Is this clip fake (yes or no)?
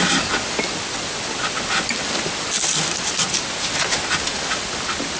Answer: no